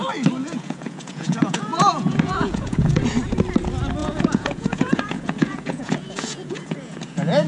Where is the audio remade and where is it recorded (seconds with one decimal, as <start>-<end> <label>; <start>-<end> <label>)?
0.0-0.4 recorded; 0.4-3.0 remade; 3.0-4.0 recorded; 4.0-7.5 remade